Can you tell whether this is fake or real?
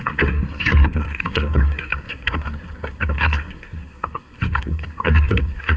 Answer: fake